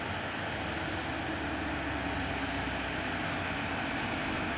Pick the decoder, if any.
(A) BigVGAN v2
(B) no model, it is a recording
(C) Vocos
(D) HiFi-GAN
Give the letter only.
B